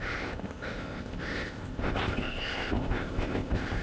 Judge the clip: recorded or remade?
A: remade